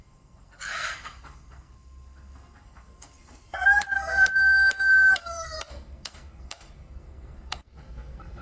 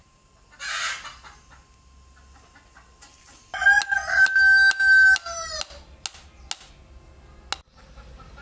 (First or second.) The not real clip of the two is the first